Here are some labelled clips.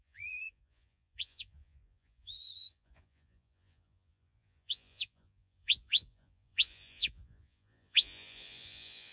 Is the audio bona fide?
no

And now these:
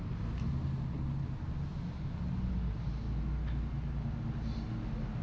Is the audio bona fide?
yes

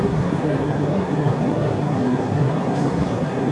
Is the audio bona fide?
no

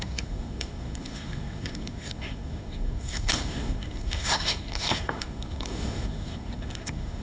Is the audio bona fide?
no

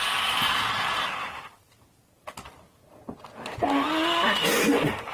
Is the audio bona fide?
yes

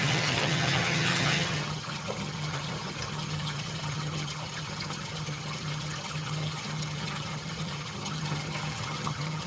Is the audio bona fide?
no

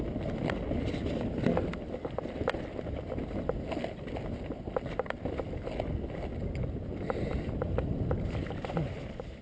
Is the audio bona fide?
yes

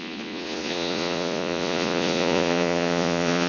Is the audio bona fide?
no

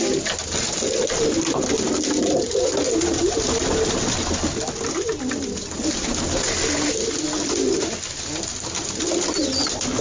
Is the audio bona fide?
yes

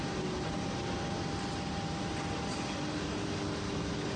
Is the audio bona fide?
yes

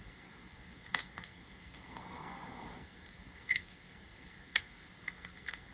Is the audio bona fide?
no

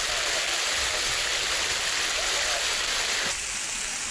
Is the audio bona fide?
yes